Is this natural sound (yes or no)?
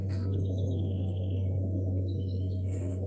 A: no